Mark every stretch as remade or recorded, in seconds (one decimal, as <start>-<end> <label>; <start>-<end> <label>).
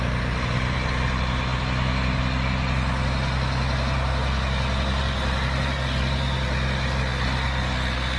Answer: 0.0-8.2 recorded